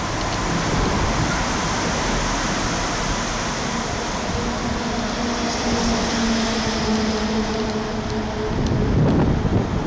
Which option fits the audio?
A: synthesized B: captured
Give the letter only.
B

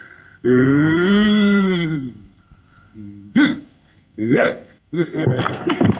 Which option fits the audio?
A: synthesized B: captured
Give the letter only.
A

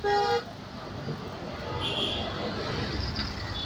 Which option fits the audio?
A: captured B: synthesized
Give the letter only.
A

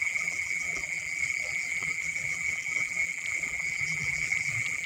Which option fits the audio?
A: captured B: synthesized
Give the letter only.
B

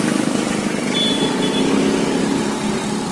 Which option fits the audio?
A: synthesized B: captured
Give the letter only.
A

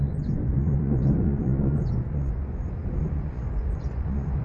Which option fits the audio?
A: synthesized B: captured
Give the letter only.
A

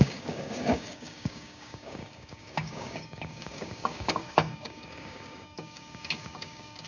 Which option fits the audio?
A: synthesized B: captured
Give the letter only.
A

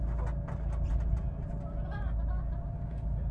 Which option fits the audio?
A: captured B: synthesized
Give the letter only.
A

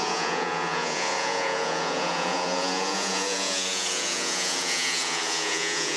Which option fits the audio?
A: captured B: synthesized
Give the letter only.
B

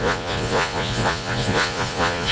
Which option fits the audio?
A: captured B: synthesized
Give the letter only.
B